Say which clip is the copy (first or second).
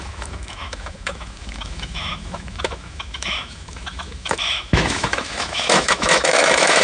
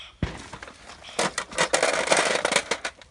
first